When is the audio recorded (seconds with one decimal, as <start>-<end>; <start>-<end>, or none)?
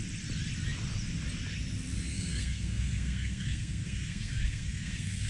0.0-2.1